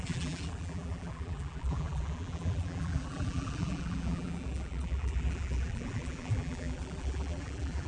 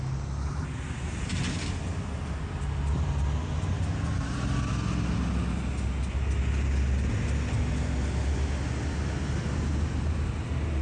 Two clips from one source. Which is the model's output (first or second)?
first